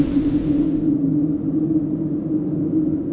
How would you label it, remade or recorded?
recorded